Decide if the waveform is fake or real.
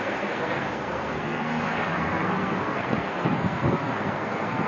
fake